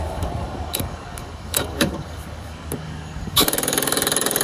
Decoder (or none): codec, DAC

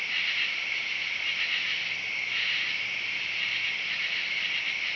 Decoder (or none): none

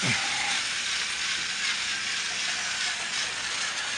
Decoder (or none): none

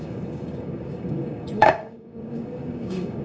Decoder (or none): codec, DAC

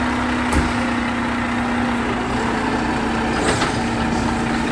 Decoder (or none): none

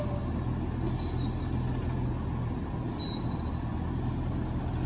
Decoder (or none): none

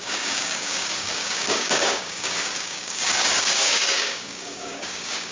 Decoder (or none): codec, DAC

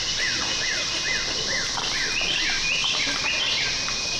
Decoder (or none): none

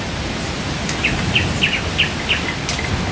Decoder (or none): none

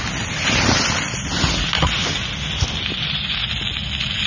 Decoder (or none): none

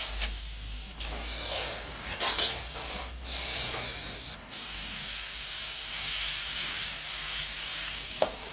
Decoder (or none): codec, DAC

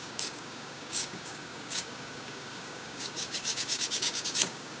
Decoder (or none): codec, DAC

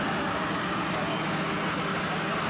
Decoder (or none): none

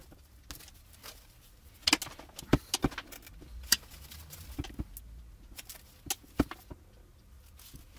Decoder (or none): none